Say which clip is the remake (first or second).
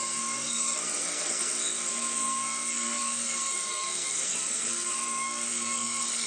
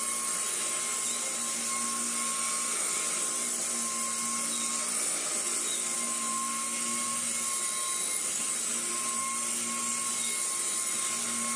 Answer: first